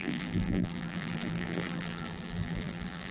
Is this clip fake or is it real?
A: fake